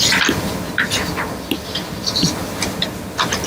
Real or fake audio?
real